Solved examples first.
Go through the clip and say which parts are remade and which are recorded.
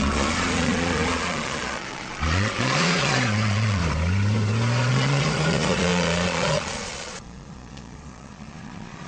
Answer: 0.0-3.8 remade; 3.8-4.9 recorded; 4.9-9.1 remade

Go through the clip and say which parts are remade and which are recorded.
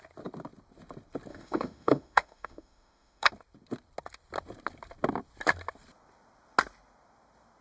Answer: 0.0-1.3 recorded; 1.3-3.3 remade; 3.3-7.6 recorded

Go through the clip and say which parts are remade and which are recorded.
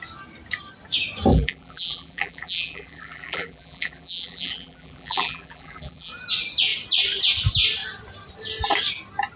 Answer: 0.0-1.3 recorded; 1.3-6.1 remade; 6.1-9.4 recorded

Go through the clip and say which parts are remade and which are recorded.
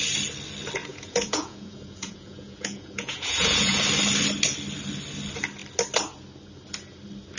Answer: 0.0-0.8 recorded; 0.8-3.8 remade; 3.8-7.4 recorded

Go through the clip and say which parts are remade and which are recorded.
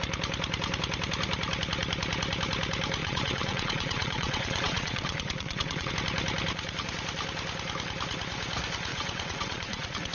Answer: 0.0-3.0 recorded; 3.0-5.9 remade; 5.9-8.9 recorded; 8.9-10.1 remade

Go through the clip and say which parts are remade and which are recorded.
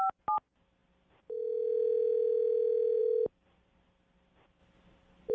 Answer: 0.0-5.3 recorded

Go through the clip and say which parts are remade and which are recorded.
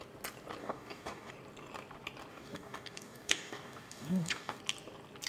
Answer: 0.0-0.6 recorded; 0.6-1.3 remade; 1.3-2.3 recorded; 2.3-4.6 remade; 4.6-5.3 recorded